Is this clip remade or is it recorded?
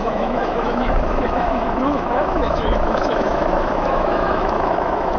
remade